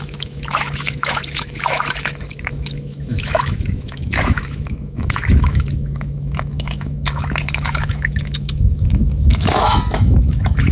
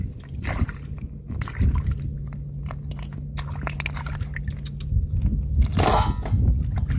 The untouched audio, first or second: second